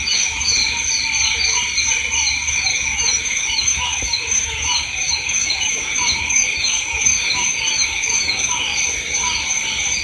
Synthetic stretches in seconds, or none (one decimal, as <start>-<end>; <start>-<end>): 0.0-0.6; 2.5-8.7